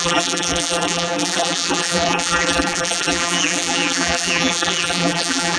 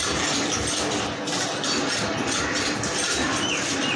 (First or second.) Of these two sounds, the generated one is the first